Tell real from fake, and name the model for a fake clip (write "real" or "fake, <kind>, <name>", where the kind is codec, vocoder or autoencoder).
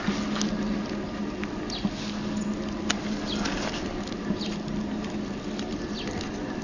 real